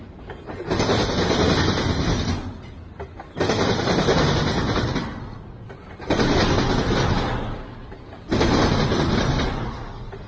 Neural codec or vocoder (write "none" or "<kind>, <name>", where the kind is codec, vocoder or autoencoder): none